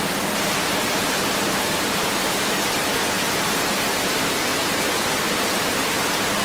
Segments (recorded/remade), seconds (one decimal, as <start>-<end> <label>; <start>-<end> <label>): 0.0-2.8 remade; 2.8-3.5 recorded; 3.5-6.4 remade